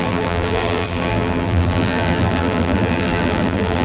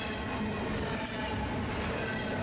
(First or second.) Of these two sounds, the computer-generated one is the first